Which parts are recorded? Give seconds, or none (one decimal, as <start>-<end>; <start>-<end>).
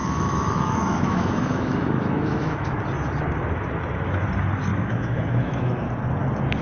2.8-4.7; 5.7-6.6